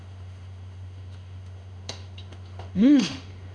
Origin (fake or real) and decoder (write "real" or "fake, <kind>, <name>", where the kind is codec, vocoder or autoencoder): fake, autoencoder, DAC-VAE